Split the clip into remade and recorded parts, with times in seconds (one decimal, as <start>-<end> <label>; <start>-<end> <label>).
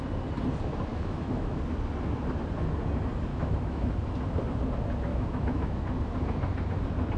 0.0-0.9 recorded; 0.9-1.6 remade; 1.6-3.3 recorded; 3.3-3.9 remade; 3.9-5.1 recorded; 5.1-5.8 remade; 5.8-7.2 recorded